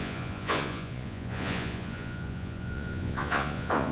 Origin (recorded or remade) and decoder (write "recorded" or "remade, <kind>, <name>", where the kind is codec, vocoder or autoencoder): remade, vocoder, Vocos